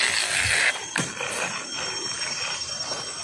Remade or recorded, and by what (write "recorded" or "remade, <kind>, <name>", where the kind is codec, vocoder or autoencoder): recorded